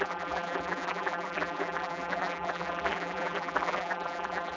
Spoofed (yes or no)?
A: yes